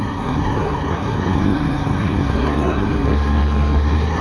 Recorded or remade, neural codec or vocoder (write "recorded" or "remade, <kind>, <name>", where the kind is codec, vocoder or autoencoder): remade, codec, SNAC